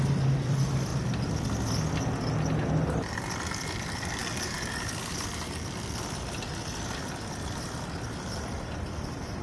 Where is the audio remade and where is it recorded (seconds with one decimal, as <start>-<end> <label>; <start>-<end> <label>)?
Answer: 0.0-0.9 remade; 0.9-3.3 recorded; 3.3-9.4 remade